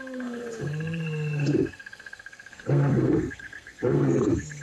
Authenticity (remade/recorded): remade